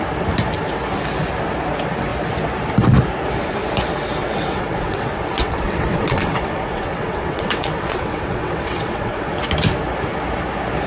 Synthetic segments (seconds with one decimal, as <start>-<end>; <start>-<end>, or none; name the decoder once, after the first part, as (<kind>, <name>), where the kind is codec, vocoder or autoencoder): 4.2-9.4 (vocoder, WaveNeXt)